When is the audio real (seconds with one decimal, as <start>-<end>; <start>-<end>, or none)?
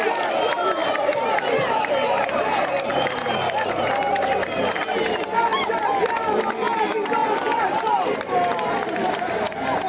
0.0-0.8; 1.9-2.9; 4.7-7.2; 9.1-9.9